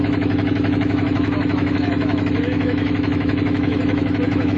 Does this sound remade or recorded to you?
remade